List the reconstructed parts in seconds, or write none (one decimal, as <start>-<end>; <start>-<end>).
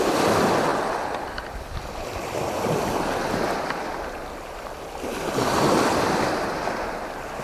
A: none